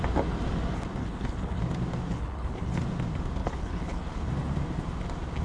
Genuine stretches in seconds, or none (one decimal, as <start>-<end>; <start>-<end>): 0.0-1.0; 1.6-2.1; 2.8-3.4; 4.2-5.4